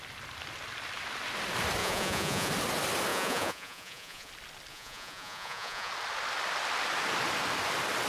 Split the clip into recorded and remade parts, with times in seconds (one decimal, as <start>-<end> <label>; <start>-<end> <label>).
0.0-1.8 recorded; 1.8-2.5 remade; 2.5-3.1 recorded; 3.1-4.3 remade; 4.3-4.7 recorded; 4.7-5.9 remade; 5.9-8.1 recorded